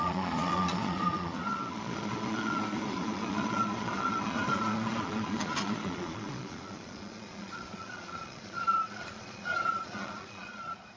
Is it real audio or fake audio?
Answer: fake